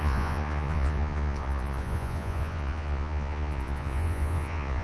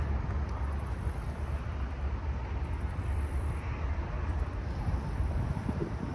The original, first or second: second